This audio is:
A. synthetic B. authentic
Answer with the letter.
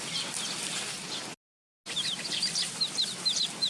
B